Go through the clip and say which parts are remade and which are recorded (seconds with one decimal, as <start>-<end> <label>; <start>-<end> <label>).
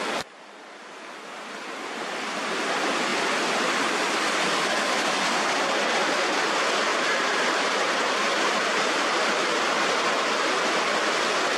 0.0-6.9 recorded; 6.9-10.8 remade; 10.8-11.6 recorded